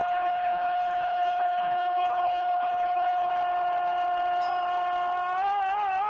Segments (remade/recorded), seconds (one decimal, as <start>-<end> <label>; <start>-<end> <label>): 0.0-3.3 remade; 3.3-6.1 recorded

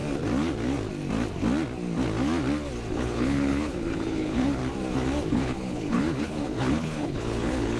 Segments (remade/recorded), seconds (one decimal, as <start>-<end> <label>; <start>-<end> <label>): 0.0-2.9 recorded; 2.9-4.6 remade; 4.6-5.3 recorded; 5.3-7.8 remade

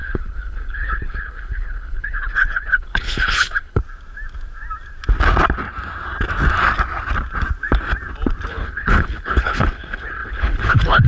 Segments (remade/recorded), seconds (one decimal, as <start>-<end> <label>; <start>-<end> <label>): 0.0-3.8 remade; 3.8-8.5 recorded; 8.5-11.1 remade

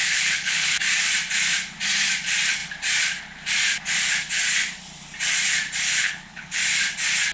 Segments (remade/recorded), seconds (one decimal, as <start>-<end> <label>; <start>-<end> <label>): 0.0-0.8 remade; 0.8-6.0 recorded; 6.0-6.6 remade; 6.6-7.3 recorded

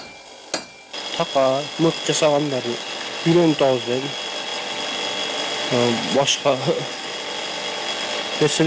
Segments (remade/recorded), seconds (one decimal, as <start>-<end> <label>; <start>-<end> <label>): 0.0-8.7 recorded